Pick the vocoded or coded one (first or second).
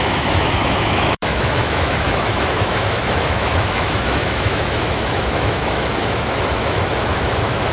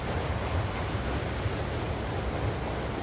first